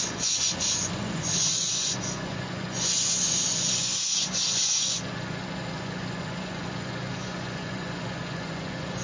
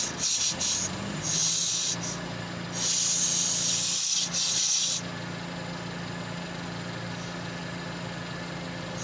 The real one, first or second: second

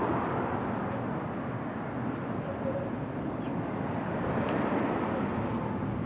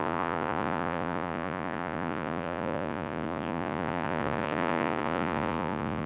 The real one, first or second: first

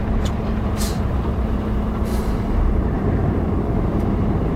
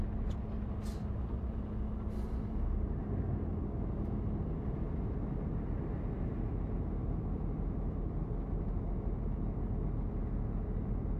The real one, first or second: second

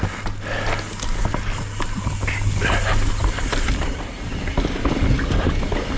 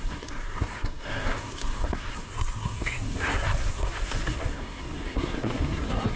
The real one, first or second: first